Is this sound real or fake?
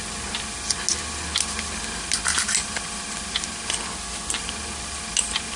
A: real